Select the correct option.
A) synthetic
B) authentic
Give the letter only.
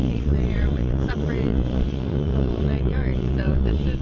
A